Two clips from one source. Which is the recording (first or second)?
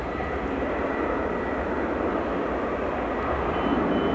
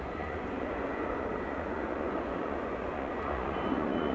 first